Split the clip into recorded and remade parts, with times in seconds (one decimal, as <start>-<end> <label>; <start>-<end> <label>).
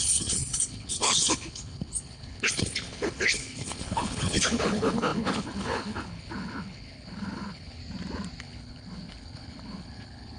0.0-7.8 remade; 7.8-8.4 recorded; 8.4-10.4 remade